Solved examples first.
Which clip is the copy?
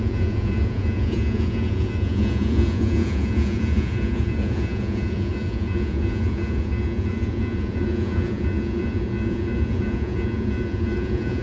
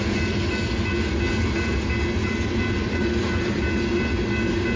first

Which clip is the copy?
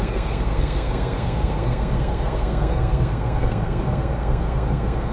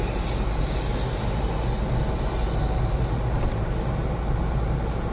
first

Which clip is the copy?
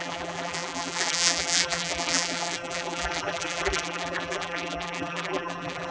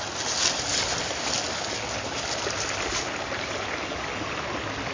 first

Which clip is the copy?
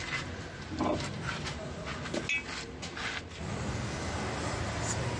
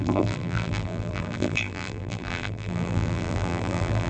second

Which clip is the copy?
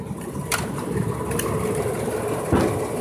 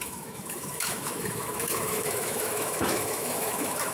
second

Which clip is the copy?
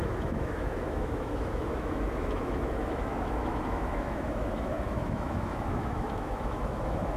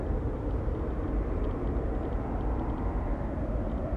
first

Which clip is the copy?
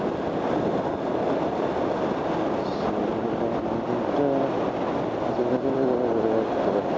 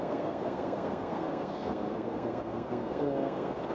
second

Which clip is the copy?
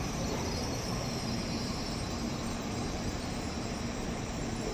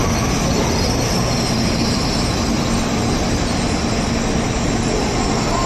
first